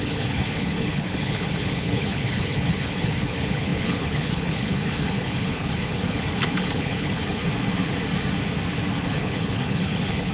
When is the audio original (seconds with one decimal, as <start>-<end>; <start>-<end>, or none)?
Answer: 7.4-9.0